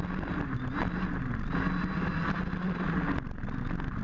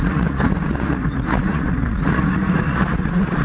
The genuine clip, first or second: first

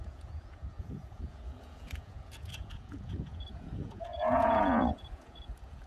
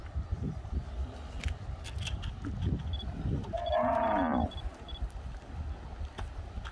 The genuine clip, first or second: second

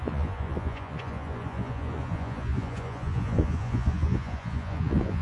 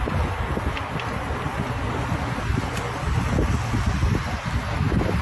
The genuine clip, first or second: second